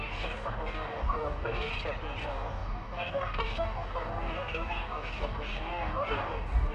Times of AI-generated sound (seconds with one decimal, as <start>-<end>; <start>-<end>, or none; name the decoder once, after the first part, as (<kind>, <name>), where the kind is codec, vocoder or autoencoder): 0.0-1.7 (codec, DAC); 2.2-6.7